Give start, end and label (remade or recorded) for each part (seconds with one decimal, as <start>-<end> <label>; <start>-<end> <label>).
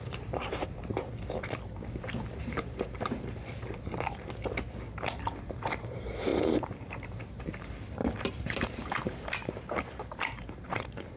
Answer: 0.0-0.9 remade; 0.9-2.4 recorded; 2.4-11.2 remade